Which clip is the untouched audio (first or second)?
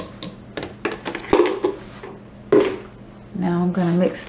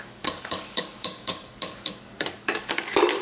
first